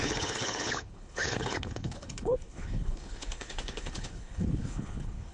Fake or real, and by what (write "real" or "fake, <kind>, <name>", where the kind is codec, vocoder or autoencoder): fake, codec, HILCodec